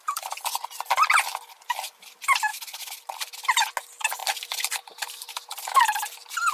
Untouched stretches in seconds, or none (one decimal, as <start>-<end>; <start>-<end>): 0.0-6.5